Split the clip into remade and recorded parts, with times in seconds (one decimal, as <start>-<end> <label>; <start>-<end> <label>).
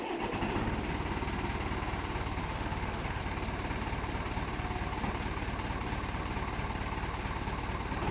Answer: 0.0-2.4 recorded; 2.4-3.2 remade; 3.2-8.1 recorded